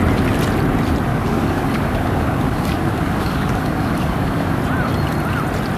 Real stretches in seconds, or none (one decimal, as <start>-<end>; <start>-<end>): 0.0-1.1; 4.6-5.8